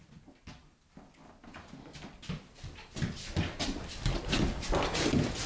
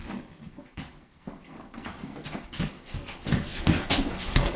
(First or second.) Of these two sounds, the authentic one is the first